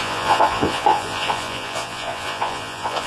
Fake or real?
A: fake